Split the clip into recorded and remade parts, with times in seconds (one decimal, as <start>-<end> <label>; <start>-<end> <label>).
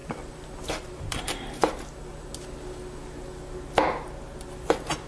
0.0-5.1 recorded